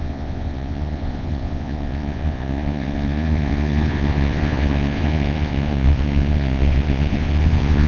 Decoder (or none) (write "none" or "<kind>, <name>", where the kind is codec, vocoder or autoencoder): vocoder, Vocos